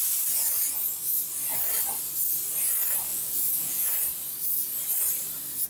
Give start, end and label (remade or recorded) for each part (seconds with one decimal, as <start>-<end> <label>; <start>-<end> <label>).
0.0-3.1 recorded; 3.1-3.9 remade; 3.9-5.7 recorded